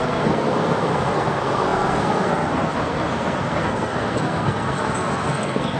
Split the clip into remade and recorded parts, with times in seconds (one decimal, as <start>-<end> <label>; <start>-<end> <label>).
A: 0.0-5.8 remade